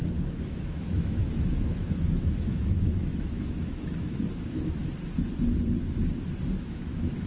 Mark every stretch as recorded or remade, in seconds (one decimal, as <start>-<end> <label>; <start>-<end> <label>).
0.0-4.8 remade; 4.8-6.6 recorded; 6.6-7.3 remade